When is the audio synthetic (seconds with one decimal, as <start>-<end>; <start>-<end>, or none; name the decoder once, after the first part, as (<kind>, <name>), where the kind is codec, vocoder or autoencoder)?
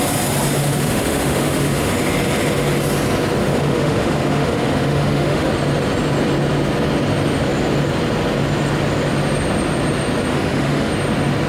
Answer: 0.6-1.9 (autoencoder, DAC-VAE); 3.4-5.5; 10.3-10.9